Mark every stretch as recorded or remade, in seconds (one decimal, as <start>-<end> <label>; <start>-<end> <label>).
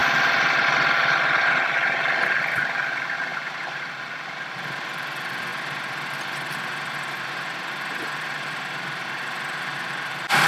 0.0-2.4 recorded; 2.4-5.5 remade; 5.5-7.2 recorded; 7.2-10.5 remade